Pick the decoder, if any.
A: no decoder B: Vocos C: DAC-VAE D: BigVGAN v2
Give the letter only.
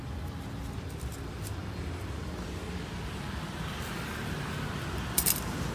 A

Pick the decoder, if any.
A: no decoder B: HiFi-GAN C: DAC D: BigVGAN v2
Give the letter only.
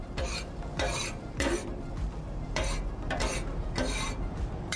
D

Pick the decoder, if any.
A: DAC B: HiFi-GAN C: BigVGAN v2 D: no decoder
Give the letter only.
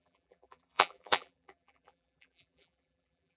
C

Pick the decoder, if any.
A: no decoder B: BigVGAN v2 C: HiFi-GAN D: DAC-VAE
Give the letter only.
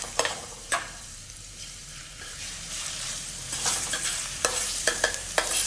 B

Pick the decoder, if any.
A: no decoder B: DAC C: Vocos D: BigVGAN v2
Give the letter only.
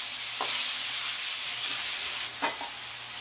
A